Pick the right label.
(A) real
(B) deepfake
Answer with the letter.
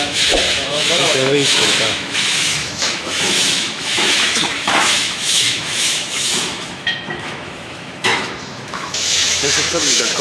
B